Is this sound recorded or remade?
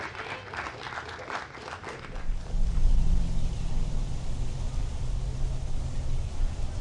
recorded